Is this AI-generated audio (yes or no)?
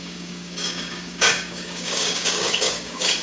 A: yes